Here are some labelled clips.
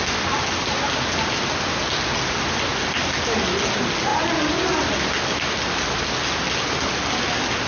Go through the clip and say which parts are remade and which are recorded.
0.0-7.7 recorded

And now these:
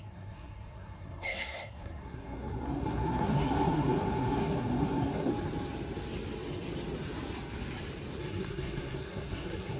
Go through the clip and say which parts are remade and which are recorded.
0.0-5.3 remade; 5.3-8.2 recorded; 8.2-9.8 remade

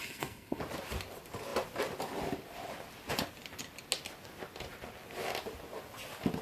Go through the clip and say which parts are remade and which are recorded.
0.0-0.6 remade; 0.6-6.4 recorded

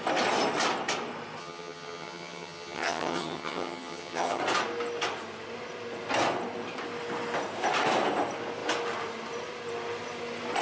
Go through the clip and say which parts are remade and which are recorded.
0.0-1.4 recorded; 1.4-4.4 remade; 4.4-10.6 recorded

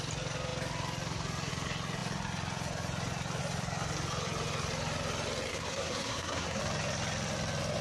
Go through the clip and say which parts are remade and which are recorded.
0.0-5.5 recorded; 5.5-6.6 remade; 6.6-7.8 recorded

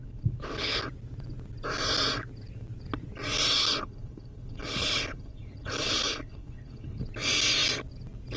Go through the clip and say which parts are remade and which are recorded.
0.0-0.8 remade; 0.8-3.6 recorded; 3.6-7.0 remade; 7.0-8.4 recorded

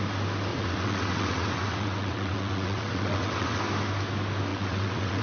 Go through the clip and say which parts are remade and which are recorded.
0.0-0.5 recorded; 0.5-3.6 remade; 3.6-4.5 recorded; 4.5-5.2 remade